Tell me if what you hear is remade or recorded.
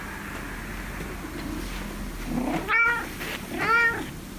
recorded